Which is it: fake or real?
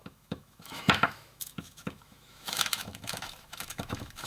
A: fake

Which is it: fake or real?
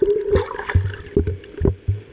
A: real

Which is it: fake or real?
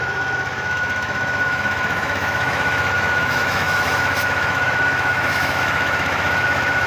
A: fake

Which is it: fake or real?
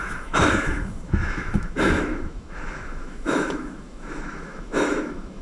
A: fake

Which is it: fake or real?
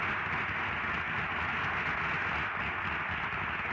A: real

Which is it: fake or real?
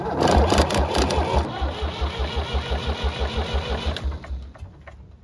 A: real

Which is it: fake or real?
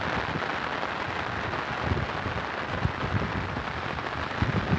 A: real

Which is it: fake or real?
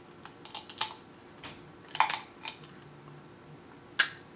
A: real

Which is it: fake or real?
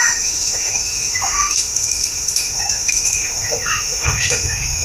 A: fake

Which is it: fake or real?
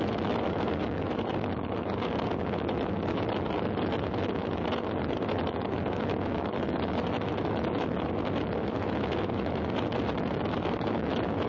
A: fake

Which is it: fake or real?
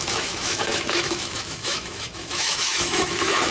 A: fake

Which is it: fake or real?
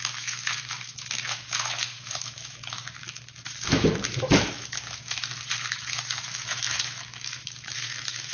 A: fake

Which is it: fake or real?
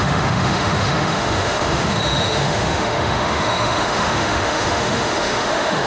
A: fake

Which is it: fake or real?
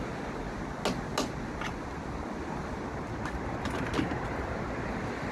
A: real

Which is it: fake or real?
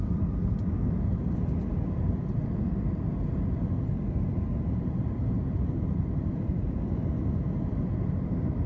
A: real